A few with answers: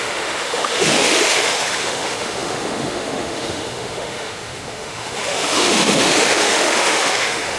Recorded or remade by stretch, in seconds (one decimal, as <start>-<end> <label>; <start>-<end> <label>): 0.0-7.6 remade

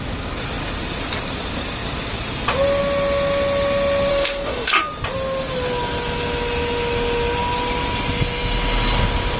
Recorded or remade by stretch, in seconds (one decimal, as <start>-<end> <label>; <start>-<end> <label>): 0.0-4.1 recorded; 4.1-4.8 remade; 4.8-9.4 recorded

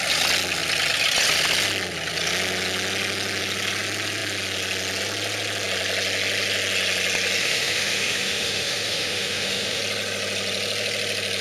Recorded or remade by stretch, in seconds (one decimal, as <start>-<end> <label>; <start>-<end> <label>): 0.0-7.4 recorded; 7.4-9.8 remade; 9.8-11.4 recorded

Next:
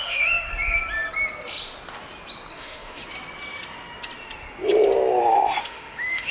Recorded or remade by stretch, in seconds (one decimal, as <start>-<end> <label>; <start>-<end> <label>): 0.0-0.5 remade; 0.5-2.5 recorded; 2.5-3.0 remade; 3.0-5.6 recorded; 5.6-6.3 remade